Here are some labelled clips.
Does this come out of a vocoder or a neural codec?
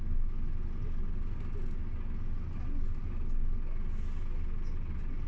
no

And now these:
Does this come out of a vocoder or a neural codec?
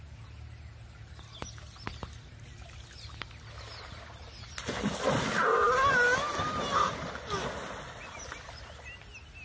no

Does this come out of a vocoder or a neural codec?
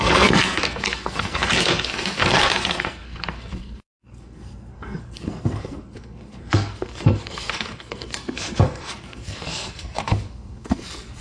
yes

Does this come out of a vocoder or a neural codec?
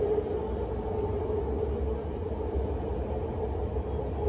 no